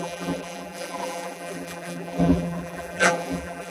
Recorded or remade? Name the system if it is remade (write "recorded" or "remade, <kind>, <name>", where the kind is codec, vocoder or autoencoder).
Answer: remade, vocoder, BigVGAN v2